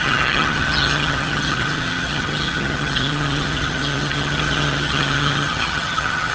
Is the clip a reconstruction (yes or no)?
yes